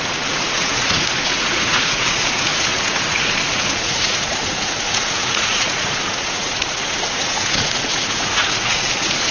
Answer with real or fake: fake